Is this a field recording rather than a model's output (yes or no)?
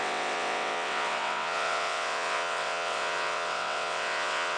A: no